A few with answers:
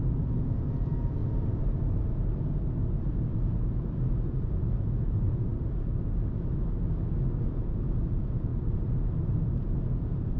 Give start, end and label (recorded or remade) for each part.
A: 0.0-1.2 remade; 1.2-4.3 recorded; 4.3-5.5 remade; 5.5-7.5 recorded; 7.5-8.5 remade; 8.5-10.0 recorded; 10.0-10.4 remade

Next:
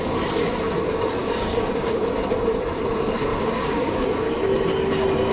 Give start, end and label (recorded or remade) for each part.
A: 0.0-1.2 recorded; 1.2-2.0 remade; 2.0-3.3 recorded; 3.3-4.3 remade; 4.3-5.3 recorded

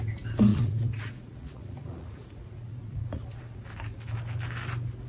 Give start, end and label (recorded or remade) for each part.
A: 0.0-0.5 recorded; 0.5-3.6 remade; 3.6-5.1 recorded

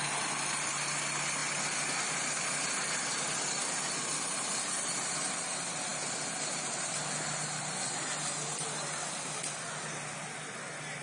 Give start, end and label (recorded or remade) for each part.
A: 0.0-11.0 recorded

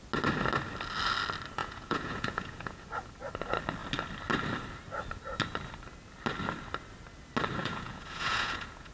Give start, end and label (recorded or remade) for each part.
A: 0.0-1.6 recorded; 1.6-2.9 remade; 2.9-7.6 recorded; 7.6-8.9 remade